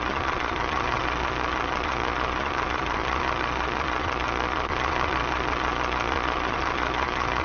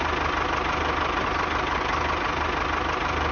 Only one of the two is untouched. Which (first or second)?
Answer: second